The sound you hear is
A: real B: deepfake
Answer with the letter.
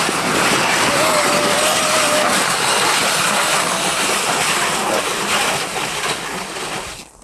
A